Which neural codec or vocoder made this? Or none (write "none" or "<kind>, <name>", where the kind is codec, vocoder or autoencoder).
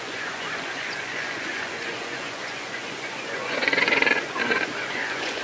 vocoder, Vocos